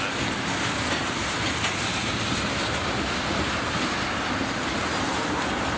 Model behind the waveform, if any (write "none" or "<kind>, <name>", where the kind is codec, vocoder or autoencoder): none